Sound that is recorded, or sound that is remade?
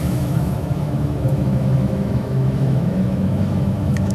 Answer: remade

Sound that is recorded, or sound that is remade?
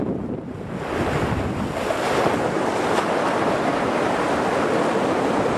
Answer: recorded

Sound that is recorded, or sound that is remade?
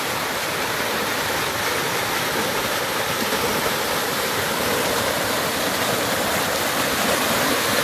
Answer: recorded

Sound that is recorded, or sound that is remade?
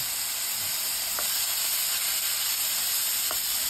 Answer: recorded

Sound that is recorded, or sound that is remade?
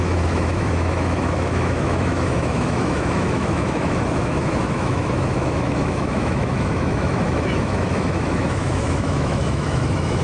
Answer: remade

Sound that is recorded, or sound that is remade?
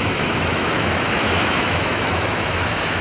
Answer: remade